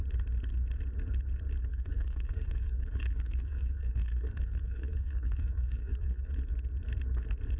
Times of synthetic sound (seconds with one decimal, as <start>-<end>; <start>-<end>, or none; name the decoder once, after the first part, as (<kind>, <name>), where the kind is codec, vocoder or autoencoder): 1.7-6.3 (codec, SNAC)